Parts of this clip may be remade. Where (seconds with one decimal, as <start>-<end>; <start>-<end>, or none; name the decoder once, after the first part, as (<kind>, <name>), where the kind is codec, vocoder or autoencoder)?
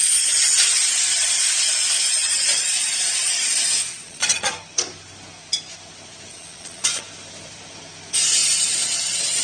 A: 2.2-4.5 (vocoder, Vocos); 6.3-7.0; 8.4-9.4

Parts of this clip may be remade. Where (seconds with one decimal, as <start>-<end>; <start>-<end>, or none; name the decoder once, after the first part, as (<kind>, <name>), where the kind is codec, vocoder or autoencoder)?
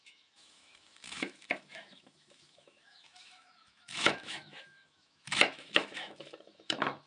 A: 0.0-7.1 (autoencoder, DAC-VAE)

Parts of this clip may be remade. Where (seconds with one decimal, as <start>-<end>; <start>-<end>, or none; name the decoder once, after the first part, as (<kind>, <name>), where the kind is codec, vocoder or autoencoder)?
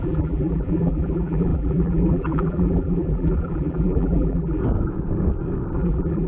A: 0.0-4.6 (vocoder, BigVGAN v2); 5.8-6.3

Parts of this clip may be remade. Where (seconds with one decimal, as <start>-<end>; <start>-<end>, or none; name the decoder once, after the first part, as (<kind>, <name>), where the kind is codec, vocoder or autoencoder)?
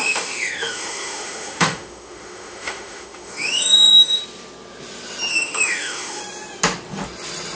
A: 0.0-4.2 (autoencoder, DAC-VAE); 5.3-6.2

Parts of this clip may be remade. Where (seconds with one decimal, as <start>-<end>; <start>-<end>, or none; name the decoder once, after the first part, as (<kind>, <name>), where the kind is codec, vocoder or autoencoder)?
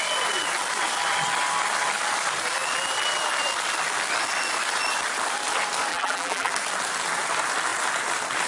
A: 5.9-6.5 (vocoder, BigVGAN v2)